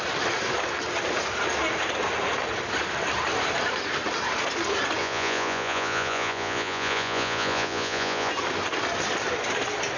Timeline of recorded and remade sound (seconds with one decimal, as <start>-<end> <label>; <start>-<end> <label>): 0.0-5.0 recorded; 5.0-8.3 remade; 8.3-10.0 recorded